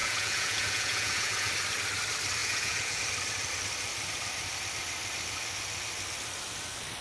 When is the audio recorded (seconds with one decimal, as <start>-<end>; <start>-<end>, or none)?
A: 1.5-2.4; 3.0-7.0

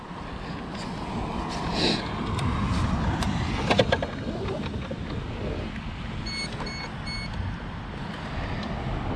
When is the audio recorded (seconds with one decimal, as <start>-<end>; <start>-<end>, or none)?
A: 0.0-9.2

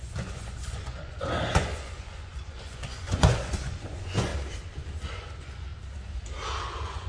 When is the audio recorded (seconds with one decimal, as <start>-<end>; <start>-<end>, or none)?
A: 4.3-5.1; 5.7-6.6

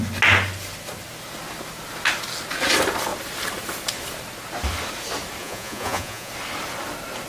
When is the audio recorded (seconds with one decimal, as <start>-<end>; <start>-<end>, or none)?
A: 0.0-5.4; 6.3-7.3

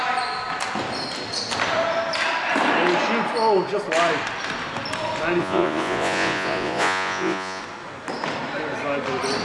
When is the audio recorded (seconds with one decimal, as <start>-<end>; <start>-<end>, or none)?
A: 0.0-5.4; 7.6-9.4